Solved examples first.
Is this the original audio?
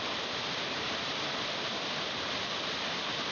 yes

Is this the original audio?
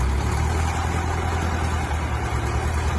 yes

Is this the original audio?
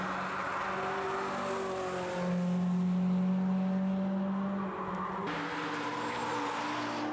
yes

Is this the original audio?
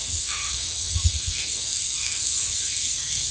no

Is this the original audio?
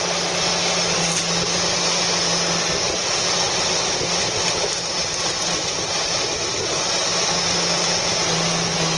yes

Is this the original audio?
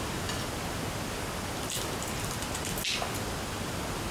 yes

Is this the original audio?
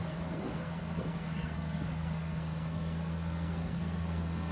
no